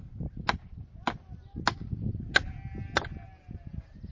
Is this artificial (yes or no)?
no